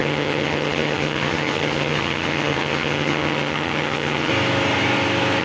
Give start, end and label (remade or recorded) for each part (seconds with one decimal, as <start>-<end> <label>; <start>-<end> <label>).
0.0-4.3 remade; 4.3-5.4 recorded